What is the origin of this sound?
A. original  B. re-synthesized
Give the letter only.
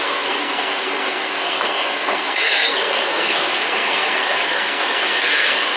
B